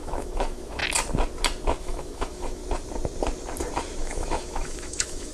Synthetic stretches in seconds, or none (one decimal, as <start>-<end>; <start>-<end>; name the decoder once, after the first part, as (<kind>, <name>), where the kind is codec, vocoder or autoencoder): 0.0-0.8 (autoencoder, DAC-VAE); 1.8-2.6; 4.0-5.3